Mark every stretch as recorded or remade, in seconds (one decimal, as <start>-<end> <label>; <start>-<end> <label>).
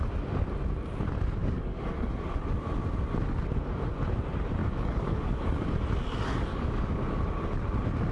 0.0-1.4 recorded; 1.4-2.1 remade; 2.1-4.6 recorded; 4.6-5.4 remade; 5.4-6.5 recorded; 6.5-7.2 remade; 7.2-8.1 recorded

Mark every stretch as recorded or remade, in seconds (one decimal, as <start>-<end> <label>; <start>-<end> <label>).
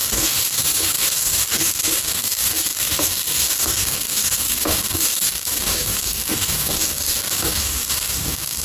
0.0-8.6 remade